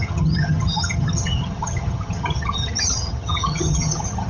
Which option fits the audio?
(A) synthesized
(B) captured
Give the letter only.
A